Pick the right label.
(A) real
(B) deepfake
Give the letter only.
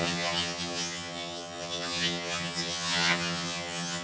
B